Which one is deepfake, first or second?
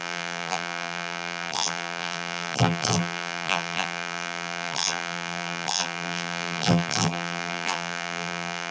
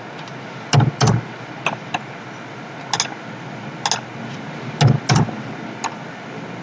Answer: first